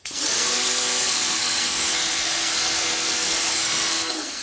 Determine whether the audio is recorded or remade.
remade